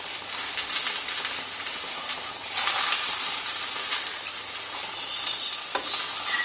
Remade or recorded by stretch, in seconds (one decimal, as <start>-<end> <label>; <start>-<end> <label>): 0.0-1.7 recorded; 1.7-5.5 remade; 5.5-6.4 recorded

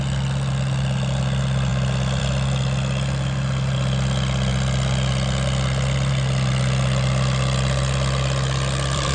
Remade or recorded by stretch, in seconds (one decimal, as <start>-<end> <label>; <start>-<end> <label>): 0.0-1.7 remade; 1.7-2.2 recorded; 2.2-9.1 remade

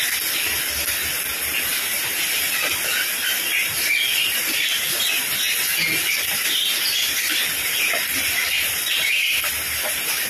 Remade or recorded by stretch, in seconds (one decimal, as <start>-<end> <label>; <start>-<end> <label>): 0.0-10.3 recorded

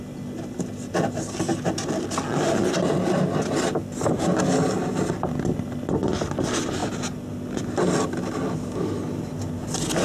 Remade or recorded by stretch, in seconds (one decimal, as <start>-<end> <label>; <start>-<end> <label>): 0.0-10.0 recorded

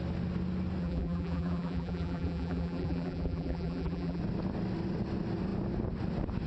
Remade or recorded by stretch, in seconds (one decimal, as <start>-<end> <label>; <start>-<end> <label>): 0.0-0.8 recorded; 0.8-4.2 remade; 4.2-6.5 recorded

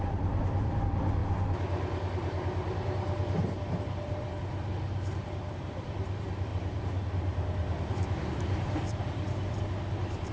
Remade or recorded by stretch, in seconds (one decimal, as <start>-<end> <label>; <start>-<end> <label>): 0.0-1.2 remade; 1.2-3.8 recorded; 3.8-10.3 remade

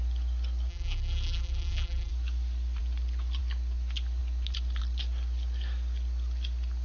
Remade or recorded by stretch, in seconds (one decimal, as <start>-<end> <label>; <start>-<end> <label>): 0.0-0.7 recorded; 0.7-2.1 remade; 2.1-6.8 recorded

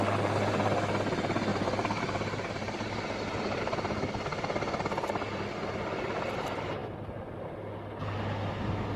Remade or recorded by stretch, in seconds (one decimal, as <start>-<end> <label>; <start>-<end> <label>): 0.0-1.5 recorded; 1.5-3.6 remade; 3.6-9.0 recorded